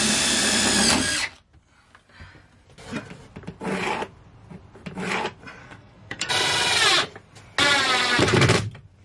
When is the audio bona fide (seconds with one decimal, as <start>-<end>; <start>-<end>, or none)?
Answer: 0.0-5.6; 6.3-9.0